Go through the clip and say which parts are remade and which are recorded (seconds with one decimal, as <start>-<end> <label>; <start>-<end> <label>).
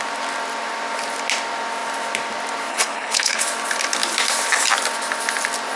0.0-2.7 recorded; 2.7-3.4 remade; 3.4-5.8 recorded